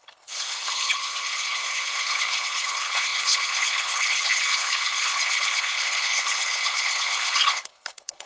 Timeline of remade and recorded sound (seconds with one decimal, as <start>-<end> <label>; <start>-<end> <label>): 0.0-8.3 remade